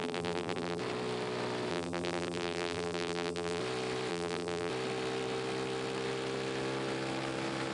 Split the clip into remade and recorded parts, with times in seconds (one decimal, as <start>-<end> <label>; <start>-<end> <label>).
0.0-0.8 remade; 0.8-1.7 recorded; 1.7-3.6 remade; 3.6-4.1 recorded; 4.1-4.7 remade; 4.7-7.7 recorded